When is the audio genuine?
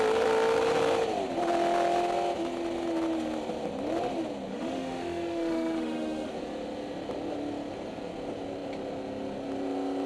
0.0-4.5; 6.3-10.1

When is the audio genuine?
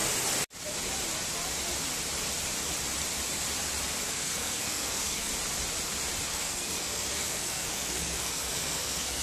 0.0-4.1; 5.3-6.3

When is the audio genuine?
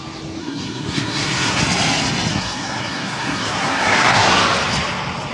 0.0-0.4; 1.6-2.3; 4.4-5.3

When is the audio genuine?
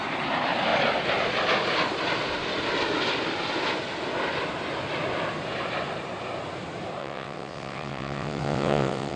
0.0-7.0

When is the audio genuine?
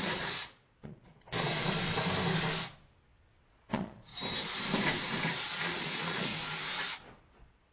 1.5-3.4; 4.1-5.3; 6.3-7.3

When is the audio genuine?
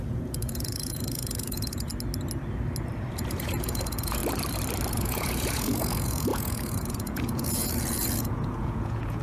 1.9-3.1; 4.2-4.9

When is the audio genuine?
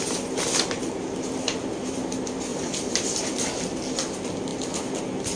0.0-2.5; 3.1-5.4